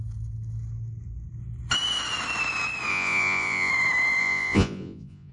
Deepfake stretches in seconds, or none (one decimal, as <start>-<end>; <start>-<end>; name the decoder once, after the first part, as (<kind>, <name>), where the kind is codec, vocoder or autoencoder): 2.9-3.7 (vocoder, Vocos); 4.2-5.3